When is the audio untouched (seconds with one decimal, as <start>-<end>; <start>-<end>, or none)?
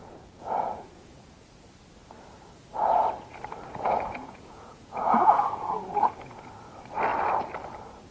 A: 1.4-3.7; 6.4-8.1